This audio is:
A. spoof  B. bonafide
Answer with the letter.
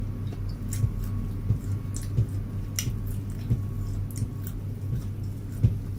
B